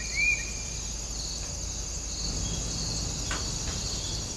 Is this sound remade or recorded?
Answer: recorded